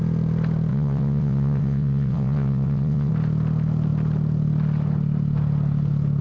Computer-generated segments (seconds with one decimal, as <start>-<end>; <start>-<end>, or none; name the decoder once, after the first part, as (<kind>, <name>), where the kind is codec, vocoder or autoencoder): 0.7-3.1 (vocoder, WaveNeXt)